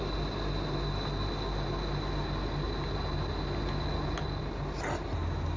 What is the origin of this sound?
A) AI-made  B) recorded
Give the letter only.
B